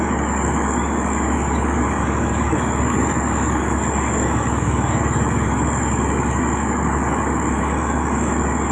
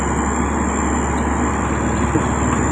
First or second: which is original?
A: second